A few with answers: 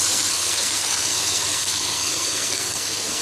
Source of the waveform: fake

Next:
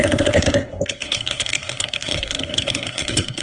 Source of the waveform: fake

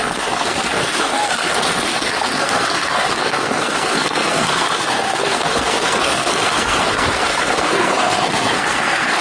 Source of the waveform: fake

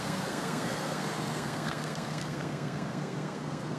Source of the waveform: fake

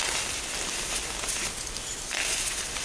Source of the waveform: real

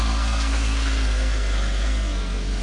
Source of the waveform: fake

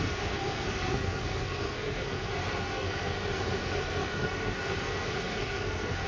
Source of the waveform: fake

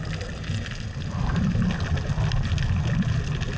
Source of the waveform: real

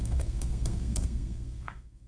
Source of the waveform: fake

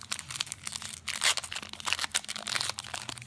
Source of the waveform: real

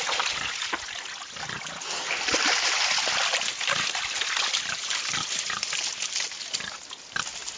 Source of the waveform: real